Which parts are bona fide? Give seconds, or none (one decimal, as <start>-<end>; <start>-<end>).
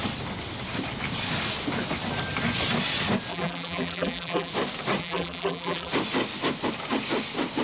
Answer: 0.0-3.3; 4.5-5.0; 5.9-7.6